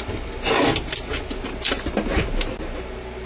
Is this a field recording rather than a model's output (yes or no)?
yes